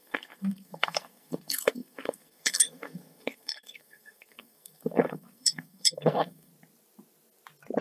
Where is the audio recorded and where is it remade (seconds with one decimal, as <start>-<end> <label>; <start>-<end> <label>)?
0.0-6.5 remade; 6.5-7.8 recorded

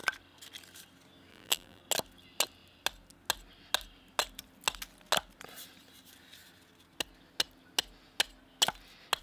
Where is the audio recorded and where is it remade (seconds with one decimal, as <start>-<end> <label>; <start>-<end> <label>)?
0.0-1.3 recorded; 1.3-1.8 remade; 1.8-9.2 recorded